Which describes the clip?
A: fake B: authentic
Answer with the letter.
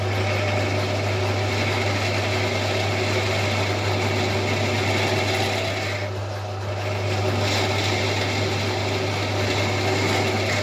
B